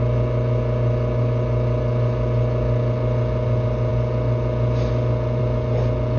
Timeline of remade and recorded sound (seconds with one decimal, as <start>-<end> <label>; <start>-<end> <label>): 0.0-6.2 recorded